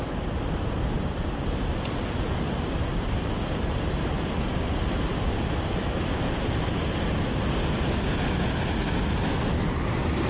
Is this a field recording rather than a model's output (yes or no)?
yes